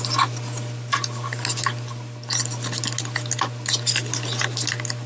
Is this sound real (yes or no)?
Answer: yes